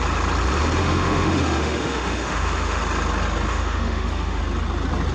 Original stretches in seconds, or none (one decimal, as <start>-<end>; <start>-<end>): 0.0-0.8; 2.8-3.5; 4.4-5.1